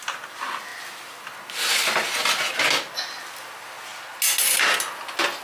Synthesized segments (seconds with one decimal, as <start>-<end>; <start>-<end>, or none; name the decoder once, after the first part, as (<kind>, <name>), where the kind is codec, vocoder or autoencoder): none

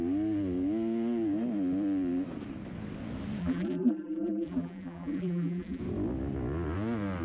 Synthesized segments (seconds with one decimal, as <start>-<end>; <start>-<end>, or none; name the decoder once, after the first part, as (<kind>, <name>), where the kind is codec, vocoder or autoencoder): 3.4-5.8 (vocoder, BigVGAN v2)

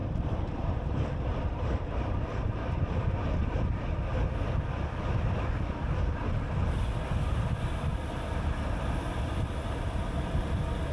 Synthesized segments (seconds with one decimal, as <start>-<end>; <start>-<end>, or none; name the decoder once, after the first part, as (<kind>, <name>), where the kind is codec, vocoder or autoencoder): 0.0-3.6 (vocoder, BigVGAN v2)

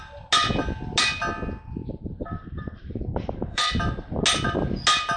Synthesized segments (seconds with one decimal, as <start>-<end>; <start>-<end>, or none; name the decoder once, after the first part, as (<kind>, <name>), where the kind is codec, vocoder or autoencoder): 1.8-3.9 (vocoder, BigVGAN v2)

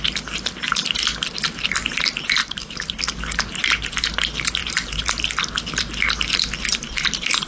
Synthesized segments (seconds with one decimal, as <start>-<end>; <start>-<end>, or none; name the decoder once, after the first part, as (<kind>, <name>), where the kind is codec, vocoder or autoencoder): 2.4-3.0 (vocoder, BigVGAN v2); 4.6-5.2

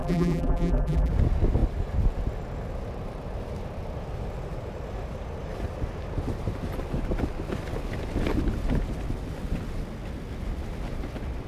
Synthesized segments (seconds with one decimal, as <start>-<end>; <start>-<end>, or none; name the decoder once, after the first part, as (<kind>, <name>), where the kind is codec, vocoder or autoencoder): 0.0-1.1 (vocoder, BigVGAN v2)

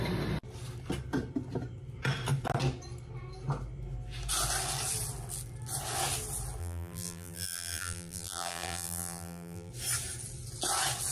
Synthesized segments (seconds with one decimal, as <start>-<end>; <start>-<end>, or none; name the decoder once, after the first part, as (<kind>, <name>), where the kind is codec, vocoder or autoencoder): 6.6-9.7 (vocoder, BigVGAN v2)